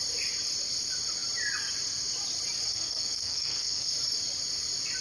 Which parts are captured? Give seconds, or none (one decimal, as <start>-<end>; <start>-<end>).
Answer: 0.0-2.7; 3.9-5.0